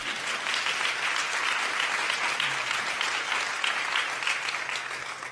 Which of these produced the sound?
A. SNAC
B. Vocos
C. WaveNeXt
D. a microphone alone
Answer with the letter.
D